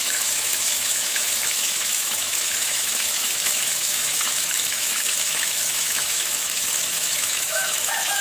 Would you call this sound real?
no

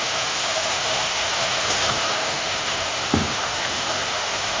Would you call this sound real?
no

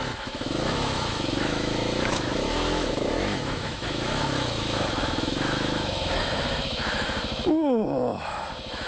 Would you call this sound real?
no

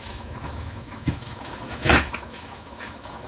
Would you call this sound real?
no